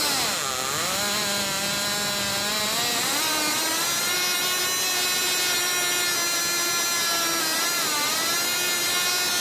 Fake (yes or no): no